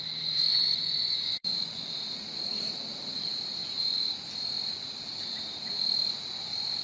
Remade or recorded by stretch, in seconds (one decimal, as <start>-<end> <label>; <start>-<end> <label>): 0.0-0.5 recorded; 0.5-1.9 remade; 1.9-3.6 recorded; 3.6-4.3 remade; 4.3-6.8 recorded